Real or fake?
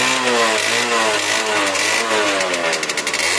real